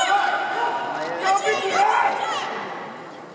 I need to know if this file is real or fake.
real